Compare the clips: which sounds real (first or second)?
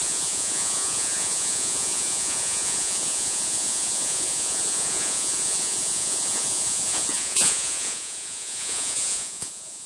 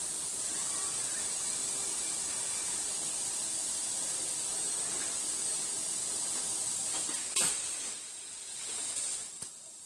second